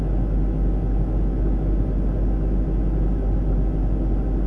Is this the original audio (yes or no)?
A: yes